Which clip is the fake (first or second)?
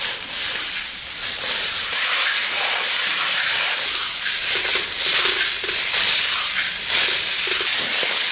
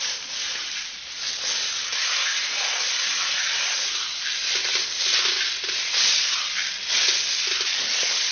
first